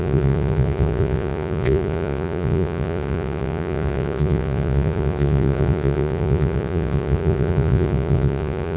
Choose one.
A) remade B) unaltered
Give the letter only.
A